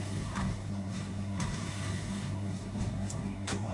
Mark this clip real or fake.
fake